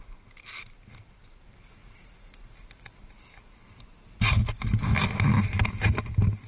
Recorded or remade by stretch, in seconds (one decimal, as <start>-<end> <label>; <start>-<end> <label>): 0.0-6.5 recorded